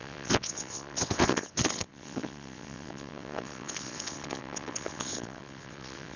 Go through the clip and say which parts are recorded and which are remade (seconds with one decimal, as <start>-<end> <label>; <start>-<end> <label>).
0.0-6.2 remade

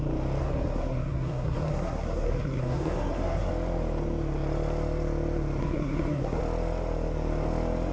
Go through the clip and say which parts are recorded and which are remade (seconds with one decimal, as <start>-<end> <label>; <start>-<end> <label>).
0.0-0.4 recorded; 0.4-3.5 remade; 3.5-5.6 recorded; 5.6-6.4 remade; 6.4-7.9 recorded

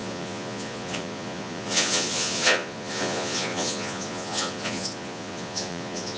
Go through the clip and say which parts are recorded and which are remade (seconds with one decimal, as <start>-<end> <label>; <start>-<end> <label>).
0.0-6.2 remade

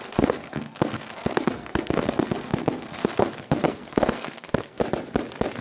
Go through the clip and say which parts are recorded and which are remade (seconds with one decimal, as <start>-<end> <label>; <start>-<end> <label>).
0.0-4.8 remade; 4.8-5.6 recorded

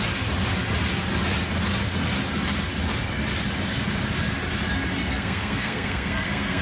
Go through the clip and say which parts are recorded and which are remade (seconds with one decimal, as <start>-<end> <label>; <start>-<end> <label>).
0.0-5.1 recorded; 5.1-6.6 remade

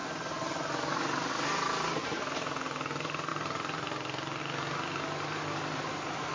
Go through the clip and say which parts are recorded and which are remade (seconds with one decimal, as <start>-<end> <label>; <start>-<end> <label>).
0.0-6.3 recorded

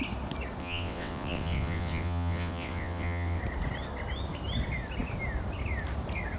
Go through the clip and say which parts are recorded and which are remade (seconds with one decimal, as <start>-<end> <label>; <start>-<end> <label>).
0.0-0.6 recorded; 0.6-3.4 remade; 3.4-6.4 recorded